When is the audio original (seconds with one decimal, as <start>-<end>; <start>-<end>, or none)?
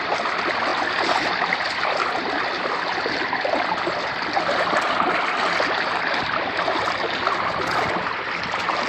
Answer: 0.0-8.9